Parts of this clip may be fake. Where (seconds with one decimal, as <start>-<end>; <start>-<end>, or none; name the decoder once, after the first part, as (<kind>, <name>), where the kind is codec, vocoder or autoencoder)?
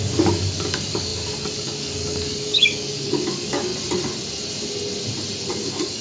0.0-3.7 (codec, DAC); 5.5-6.0